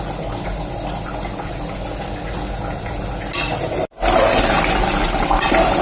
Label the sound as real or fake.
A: real